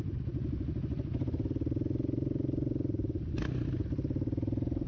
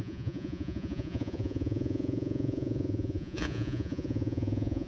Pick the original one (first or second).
first